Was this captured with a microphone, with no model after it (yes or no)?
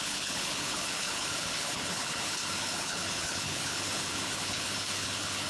no